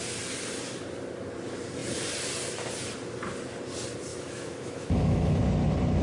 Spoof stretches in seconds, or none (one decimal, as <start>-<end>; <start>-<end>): 4.1-5.4